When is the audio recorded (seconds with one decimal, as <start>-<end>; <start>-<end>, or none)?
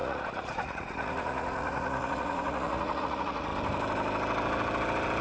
3.5-5.2